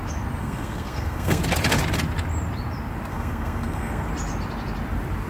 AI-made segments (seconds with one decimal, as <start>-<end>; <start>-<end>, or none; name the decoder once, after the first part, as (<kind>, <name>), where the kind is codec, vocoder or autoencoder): 0.4-1.4 (codec, SNAC); 3.1-4.1